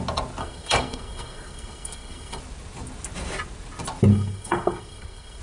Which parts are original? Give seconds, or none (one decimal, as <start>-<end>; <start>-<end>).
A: 0.0-0.4; 2.4-4.1